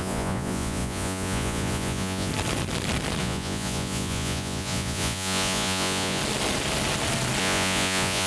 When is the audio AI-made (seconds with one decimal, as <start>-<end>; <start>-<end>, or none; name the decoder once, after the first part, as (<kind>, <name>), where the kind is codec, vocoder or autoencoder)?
0.0-2.3 (vocoder, Vocos); 3.2-6.2; 7.4-8.3